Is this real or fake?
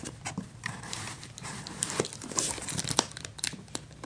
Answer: fake